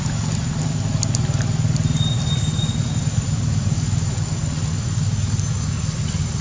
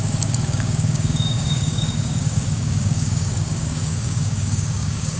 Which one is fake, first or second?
second